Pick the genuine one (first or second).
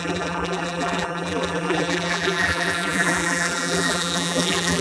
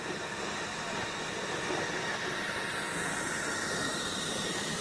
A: second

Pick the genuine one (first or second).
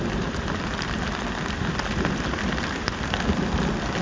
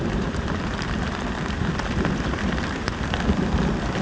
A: first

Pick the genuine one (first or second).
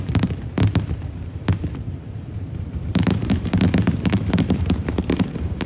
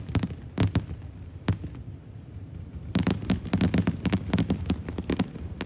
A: second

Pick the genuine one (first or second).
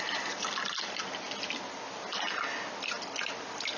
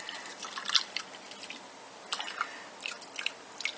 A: first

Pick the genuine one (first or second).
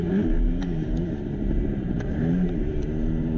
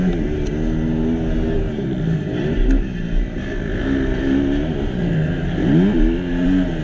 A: second